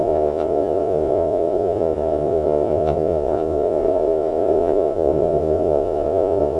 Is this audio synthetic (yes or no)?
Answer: yes